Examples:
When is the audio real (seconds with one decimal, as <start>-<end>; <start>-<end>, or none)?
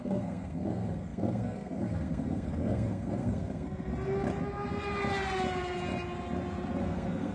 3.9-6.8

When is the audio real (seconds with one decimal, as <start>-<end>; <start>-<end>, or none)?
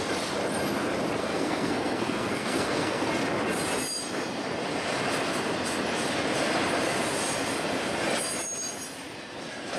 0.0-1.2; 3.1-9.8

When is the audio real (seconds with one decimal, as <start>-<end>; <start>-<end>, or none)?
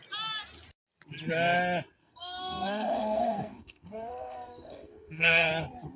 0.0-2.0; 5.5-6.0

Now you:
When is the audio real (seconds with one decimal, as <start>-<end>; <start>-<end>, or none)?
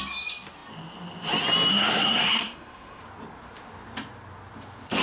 0.0-1.7; 3.0-5.0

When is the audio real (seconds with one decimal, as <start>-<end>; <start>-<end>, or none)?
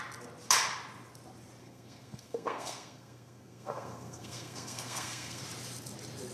0.0-1.6; 5.4-6.3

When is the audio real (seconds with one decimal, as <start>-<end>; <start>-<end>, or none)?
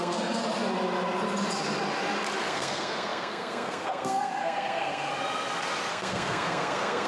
0.4-2.4; 5.1-5.9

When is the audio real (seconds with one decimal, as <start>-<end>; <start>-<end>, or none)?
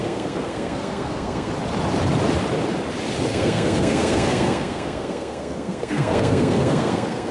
1.5-3.3